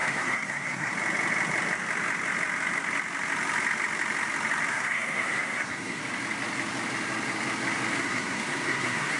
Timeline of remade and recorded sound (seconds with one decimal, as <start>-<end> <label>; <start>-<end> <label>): 0.0-0.9 remade; 0.9-4.7 recorded; 4.7-6.0 remade; 6.0-8.0 recorded; 8.0-9.2 remade